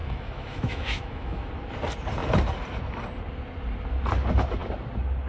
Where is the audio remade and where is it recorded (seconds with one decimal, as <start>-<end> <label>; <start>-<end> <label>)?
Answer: 0.0-1.5 remade; 1.5-5.3 recorded